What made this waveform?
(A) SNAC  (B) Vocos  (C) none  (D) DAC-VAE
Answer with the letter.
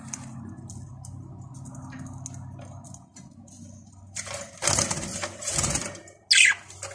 C